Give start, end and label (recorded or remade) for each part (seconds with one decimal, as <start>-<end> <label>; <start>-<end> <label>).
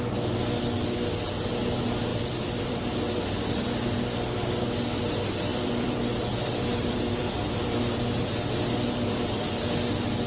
0.0-2.1 recorded; 2.1-2.9 remade; 2.9-5.5 recorded; 5.5-9.5 remade; 9.5-10.3 recorded